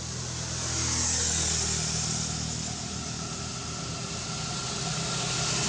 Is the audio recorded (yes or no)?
yes